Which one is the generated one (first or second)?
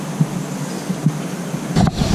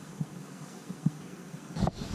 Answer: second